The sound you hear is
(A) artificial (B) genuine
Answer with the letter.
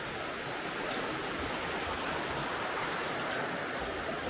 B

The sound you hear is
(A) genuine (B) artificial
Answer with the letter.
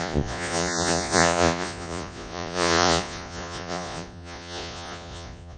B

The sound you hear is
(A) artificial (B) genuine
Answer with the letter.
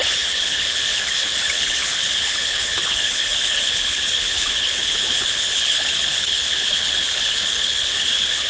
A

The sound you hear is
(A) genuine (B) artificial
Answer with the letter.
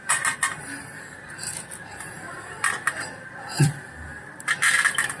A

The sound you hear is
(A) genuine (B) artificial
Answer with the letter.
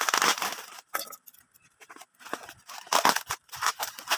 A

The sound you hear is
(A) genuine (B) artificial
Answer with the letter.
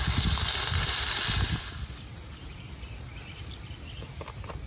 A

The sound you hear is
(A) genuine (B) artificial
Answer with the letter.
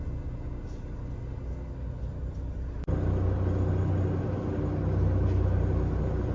A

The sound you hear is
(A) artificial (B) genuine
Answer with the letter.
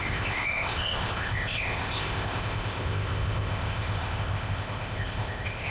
A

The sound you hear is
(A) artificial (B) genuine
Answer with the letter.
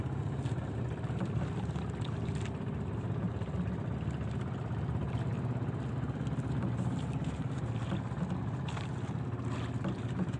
B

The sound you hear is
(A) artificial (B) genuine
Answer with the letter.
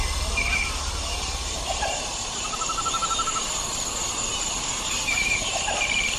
B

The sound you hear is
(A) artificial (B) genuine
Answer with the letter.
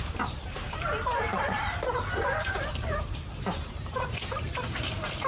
A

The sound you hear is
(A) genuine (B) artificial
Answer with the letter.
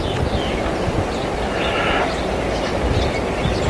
A